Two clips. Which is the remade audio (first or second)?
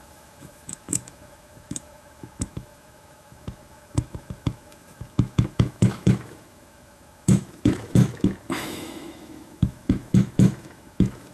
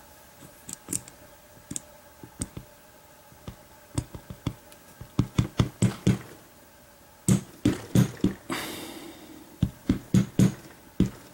first